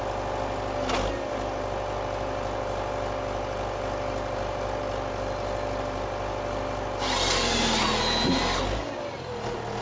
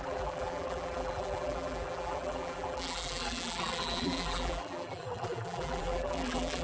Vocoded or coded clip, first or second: second